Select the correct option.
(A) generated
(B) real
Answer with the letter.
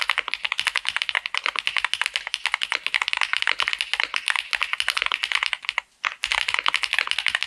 B